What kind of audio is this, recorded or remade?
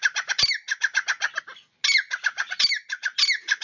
recorded